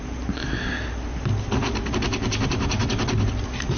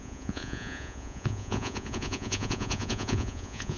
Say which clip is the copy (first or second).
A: second